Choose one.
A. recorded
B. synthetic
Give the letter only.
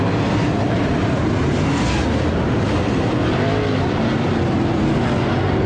A